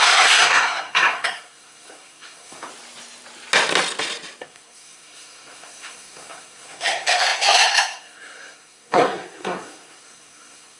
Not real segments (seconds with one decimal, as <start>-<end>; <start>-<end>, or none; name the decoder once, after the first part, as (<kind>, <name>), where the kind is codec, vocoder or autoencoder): 0.0-2.7 (codec, SNAC); 4.4-10.8